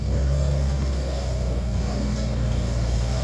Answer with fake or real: fake